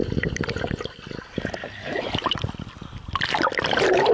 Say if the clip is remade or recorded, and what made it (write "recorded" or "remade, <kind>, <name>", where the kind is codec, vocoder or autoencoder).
recorded